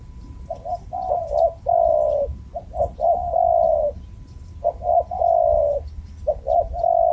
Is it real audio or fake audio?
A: real